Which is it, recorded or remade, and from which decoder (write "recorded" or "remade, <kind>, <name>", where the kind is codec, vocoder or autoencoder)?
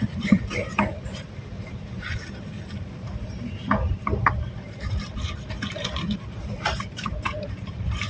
remade, vocoder, BigVGAN v2